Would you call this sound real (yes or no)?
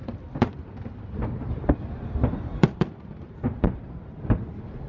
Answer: no